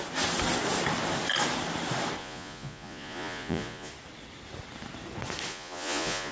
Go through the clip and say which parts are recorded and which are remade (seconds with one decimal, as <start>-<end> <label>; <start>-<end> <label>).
0.0-2.2 recorded; 2.2-3.9 remade; 3.9-5.5 recorded; 5.5-6.3 remade